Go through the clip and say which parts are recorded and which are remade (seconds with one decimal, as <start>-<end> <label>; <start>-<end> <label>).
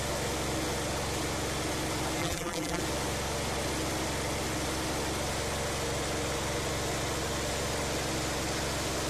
0.0-2.2 recorded; 2.2-2.8 remade; 2.8-9.1 recorded